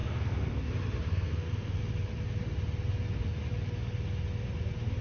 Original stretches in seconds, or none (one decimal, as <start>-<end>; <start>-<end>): 0.7-1.1; 1.8-5.0

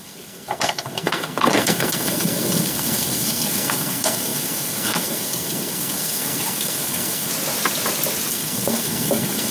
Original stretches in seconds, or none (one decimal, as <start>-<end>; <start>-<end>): 7.3-8.3